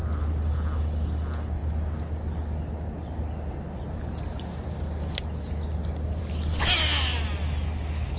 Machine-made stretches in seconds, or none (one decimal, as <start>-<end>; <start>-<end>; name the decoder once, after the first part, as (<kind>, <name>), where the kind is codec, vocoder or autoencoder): none